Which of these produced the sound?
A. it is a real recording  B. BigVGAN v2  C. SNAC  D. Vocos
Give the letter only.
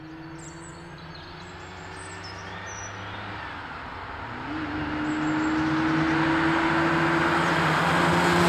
A